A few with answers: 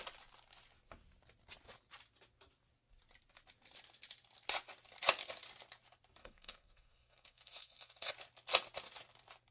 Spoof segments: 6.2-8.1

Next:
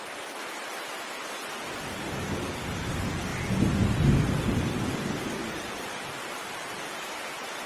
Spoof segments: 5.4-6.8

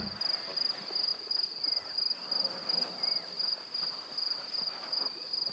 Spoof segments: none

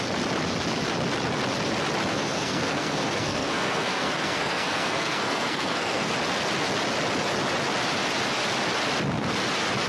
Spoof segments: 2.1-6.1

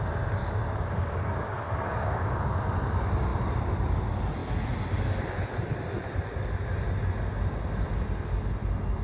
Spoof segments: 0.4-2.4

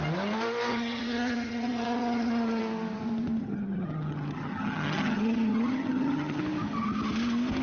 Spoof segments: 0.7-2.6; 3.4-6.4

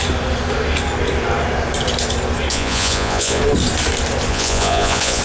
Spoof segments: 2.5-3.4; 4.3-5.2